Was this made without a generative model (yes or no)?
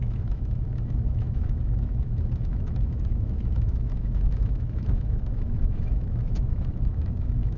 no